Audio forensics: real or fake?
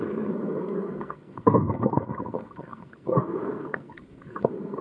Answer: fake